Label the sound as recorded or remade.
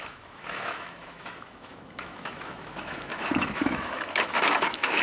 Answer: remade